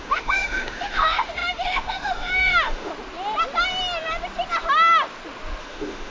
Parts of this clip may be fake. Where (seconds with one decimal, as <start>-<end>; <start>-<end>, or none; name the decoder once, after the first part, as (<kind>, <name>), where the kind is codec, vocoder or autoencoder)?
0.0-2.9 (autoencoder, DAC-VAE); 5.6-6.1